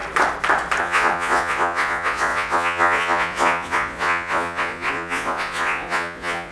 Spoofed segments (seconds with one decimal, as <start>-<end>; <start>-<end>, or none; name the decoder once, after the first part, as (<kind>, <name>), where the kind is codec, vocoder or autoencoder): 0.8-6.5 (vocoder, Vocos)